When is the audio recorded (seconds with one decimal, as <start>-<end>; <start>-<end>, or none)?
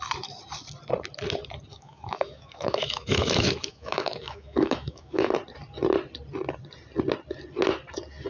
0.0-1.7; 5.3-8.3